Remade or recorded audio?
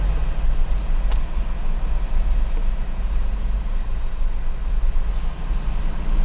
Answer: recorded